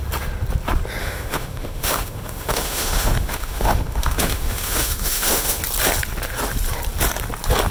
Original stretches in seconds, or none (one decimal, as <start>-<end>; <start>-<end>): 0.0-1.0; 5.6-7.7